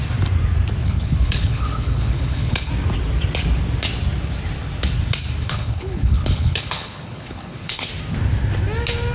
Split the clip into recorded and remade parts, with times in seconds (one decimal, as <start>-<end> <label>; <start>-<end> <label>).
0.0-0.8 recorded; 0.8-2.7 remade; 2.7-5.4 recorded; 5.4-7.9 remade; 7.9-9.1 recorded